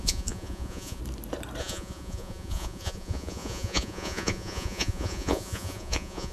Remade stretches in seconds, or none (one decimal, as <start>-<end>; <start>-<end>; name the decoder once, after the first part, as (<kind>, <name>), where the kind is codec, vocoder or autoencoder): 0.0-1.0 (vocoder, Vocos); 1.6-6.3

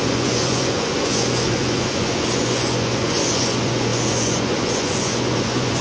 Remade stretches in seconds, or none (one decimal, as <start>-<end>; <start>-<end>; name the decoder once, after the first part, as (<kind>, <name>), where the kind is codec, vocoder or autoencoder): 0.0-5.8 (vocoder, Vocos)

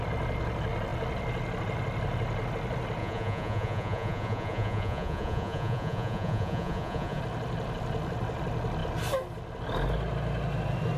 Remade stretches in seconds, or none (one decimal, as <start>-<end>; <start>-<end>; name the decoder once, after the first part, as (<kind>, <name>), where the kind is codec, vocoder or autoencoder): 3.0-7.2 (vocoder, Vocos)

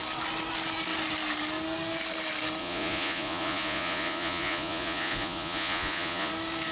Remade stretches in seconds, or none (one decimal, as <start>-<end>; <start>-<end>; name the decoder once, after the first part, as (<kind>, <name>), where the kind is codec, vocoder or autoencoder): 2.6-6.3 (vocoder, Vocos)

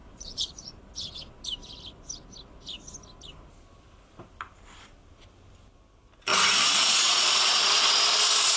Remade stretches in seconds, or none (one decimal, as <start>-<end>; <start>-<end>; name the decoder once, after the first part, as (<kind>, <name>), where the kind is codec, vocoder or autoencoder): 0.0-1.4 (vocoder, Vocos); 6.3-7.9